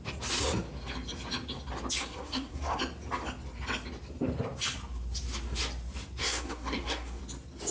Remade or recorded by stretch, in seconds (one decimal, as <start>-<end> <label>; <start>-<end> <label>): 0.0-2.0 recorded; 2.0-2.8 remade; 2.8-6.2 recorded; 6.2-7.2 remade; 7.2-7.7 recorded